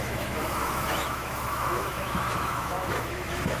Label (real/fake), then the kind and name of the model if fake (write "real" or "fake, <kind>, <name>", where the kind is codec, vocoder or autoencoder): fake, autoencoder, DAC-VAE